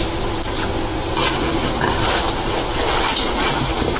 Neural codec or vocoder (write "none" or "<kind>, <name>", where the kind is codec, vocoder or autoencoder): none